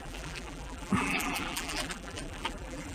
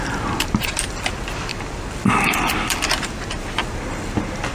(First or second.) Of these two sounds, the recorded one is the second